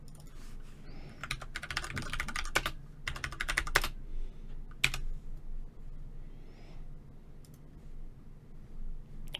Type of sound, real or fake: real